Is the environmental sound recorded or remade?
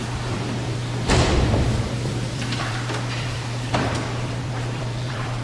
remade